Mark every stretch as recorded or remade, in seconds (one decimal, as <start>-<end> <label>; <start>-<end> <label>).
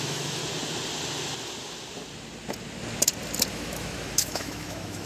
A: 0.0-0.4 remade; 0.4-3.5 recorded; 3.5-5.1 remade